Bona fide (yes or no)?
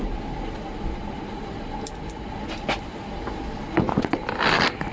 yes